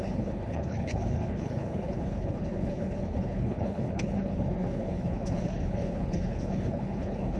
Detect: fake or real fake